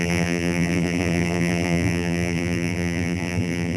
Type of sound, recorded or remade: remade